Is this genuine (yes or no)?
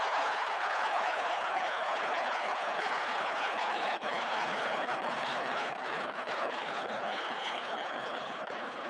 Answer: no